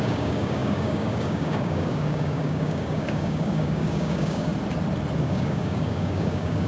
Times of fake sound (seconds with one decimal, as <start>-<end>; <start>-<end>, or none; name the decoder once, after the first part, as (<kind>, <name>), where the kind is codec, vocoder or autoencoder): 0.0-4.5 (codec, DAC); 5.2-6.7